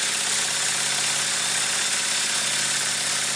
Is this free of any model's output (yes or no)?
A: yes